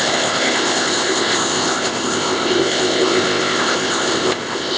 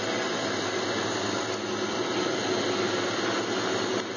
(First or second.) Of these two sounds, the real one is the second